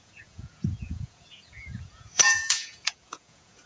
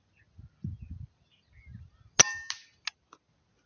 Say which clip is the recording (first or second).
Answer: second